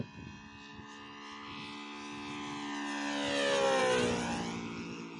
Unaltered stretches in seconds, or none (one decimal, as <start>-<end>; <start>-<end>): 0.0-5.2